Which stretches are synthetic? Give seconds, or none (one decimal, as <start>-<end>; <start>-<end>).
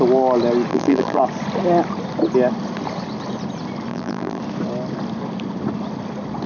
0.7-1.2; 3.9-4.4